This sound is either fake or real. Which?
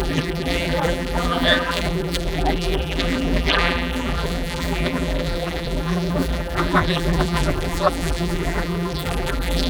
fake